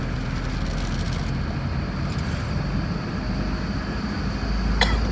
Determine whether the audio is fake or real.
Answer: real